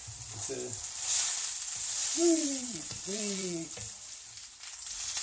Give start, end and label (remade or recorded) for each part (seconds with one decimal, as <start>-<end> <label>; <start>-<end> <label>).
0.0-2.0 recorded; 2.0-3.7 remade; 3.7-5.2 recorded